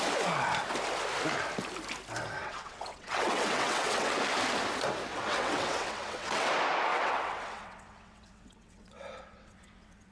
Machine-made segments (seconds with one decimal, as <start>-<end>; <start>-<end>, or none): 2.4-4.2; 5.1-6.5; 6.9-10.1